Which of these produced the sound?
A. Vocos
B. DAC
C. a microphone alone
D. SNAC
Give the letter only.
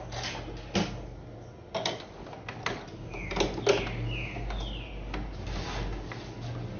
C